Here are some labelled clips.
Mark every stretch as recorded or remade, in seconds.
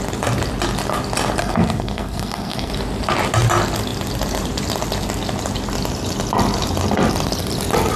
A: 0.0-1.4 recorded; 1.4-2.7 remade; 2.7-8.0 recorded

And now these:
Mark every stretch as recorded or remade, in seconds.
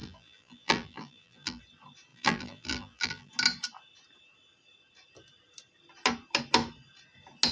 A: 0.0-1.6 remade; 1.6-2.1 recorded; 2.1-3.3 remade; 3.3-7.5 recorded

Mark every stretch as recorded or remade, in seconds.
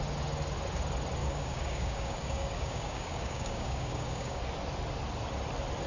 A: 0.0-1.2 recorded; 1.2-4.4 remade; 4.4-5.9 recorded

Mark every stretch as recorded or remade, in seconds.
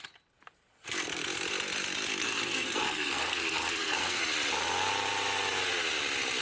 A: 0.0-2.2 recorded; 2.2-4.2 remade; 4.2-6.4 recorded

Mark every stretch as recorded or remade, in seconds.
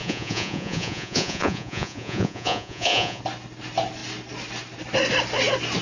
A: 0.0-3.2 remade; 3.2-5.8 recorded